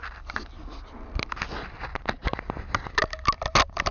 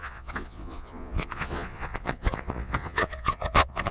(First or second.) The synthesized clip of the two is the second